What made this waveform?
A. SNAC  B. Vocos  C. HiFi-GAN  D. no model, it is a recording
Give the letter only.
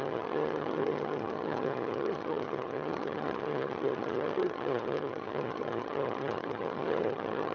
C